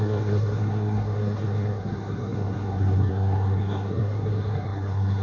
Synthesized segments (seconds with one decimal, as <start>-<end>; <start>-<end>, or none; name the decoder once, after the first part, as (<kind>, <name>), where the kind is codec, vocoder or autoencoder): 0.0-5.2 (codec, SNAC)